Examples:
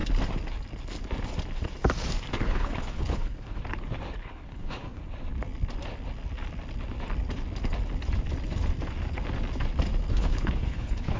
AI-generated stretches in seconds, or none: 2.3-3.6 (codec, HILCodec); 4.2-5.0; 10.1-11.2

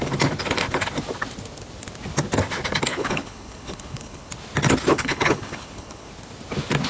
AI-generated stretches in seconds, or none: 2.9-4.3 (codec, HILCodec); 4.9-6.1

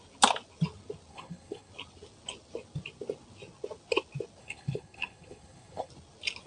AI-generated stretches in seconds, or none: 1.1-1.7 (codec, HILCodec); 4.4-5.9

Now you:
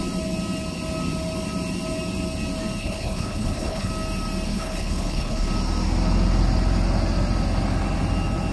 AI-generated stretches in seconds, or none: 2.8-3.9 (codec, HILCodec); 4.5-5.5

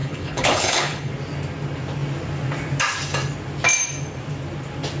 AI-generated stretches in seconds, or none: 0.0-1.1 (codec, HILCodec)

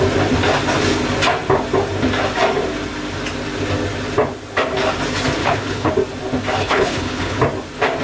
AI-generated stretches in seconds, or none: 5.4-5.9 (codec, HILCodec); 6.6-7.4

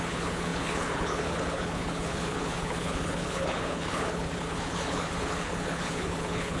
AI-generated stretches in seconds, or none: 0.0-6.6 (codec, HILCodec)

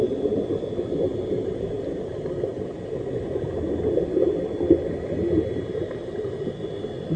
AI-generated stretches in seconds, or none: none